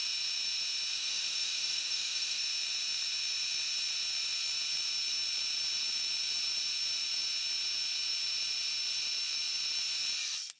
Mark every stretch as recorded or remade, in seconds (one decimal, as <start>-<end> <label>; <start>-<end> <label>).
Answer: 0.0-0.9 recorded; 0.9-2.4 remade; 2.4-10.6 recorded